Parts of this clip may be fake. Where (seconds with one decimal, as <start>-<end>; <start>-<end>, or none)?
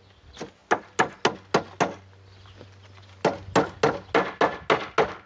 none